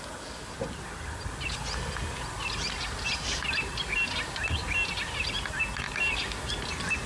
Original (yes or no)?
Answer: yes